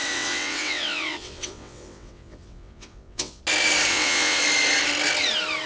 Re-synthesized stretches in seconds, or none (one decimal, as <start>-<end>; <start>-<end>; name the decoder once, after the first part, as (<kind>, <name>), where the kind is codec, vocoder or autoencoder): 0.0-3.4 (vocoder, WaveNeXt); 3.9-4.4